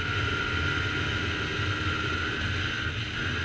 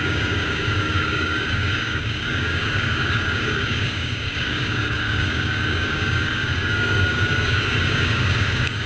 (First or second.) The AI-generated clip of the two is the second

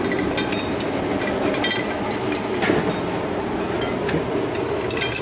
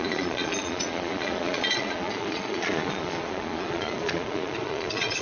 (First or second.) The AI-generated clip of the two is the second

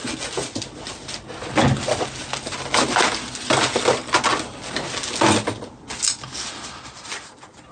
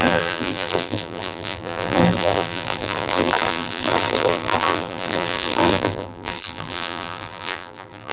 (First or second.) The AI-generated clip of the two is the second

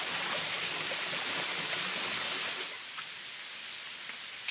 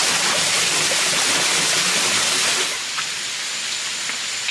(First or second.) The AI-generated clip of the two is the first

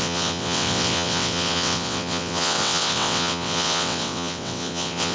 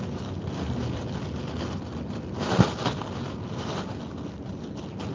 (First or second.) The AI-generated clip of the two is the first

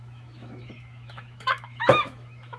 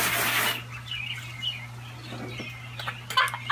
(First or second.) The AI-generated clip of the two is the first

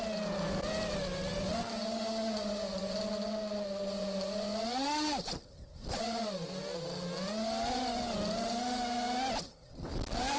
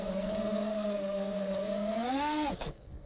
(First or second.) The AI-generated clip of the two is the second